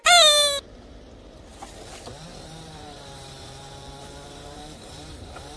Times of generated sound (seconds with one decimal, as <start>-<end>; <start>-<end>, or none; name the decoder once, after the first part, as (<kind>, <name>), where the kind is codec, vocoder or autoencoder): 2.3-5.6 (vocoder, BigVGAN v2)